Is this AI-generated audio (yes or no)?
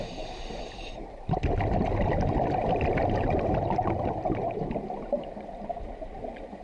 yes